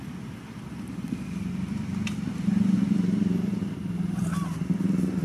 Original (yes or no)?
yes